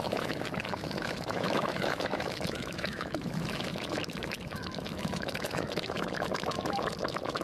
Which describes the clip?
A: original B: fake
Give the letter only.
B